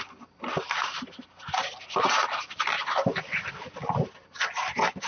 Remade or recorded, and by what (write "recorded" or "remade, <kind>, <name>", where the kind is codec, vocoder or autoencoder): recorded